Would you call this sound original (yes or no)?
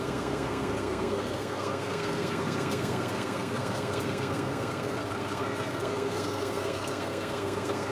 no